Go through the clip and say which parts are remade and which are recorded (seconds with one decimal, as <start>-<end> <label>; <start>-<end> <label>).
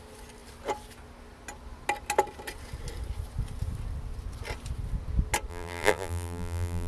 0.0-5.5 recorded; 5.5-6.9 remade